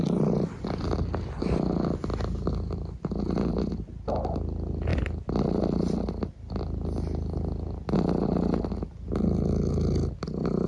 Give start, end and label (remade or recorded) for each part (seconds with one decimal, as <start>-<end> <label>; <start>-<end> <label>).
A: 0.0-10.7 recorded